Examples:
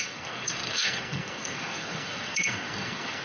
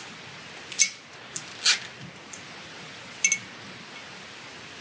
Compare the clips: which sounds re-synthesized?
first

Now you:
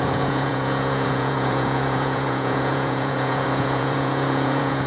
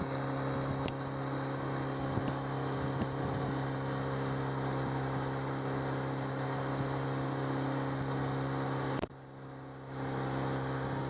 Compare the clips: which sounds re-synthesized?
first